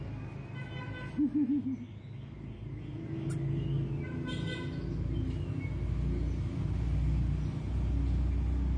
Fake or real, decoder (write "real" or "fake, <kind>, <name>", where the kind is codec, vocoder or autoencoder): real